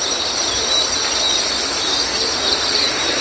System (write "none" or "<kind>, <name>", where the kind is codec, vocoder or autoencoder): vocoder, BigVGAN v2